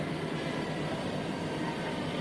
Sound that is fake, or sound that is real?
real